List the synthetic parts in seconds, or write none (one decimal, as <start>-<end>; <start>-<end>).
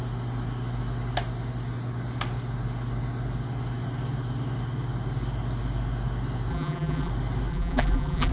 6.5-7.1; 7.5-8.3